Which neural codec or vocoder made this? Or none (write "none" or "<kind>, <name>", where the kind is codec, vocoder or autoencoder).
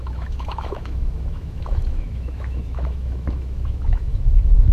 autoencoder, DAC-VAE